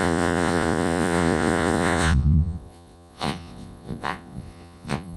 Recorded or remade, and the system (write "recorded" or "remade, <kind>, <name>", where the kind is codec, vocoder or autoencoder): remade, vocoder, Vocos